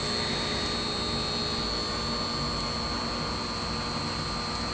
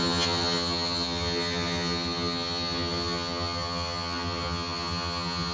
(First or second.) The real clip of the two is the first